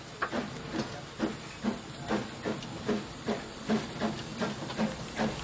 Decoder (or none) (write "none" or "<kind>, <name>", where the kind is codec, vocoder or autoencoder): none